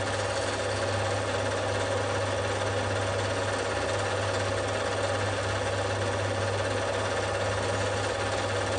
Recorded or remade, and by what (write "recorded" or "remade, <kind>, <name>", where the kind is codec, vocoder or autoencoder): recorded